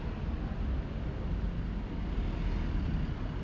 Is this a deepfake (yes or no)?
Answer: no